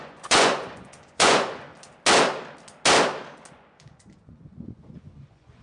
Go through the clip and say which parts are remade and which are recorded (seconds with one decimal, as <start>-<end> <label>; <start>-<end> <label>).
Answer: 0.0-1.7 remade; 1.7-3.5 recorded; 3.5-5.6 remade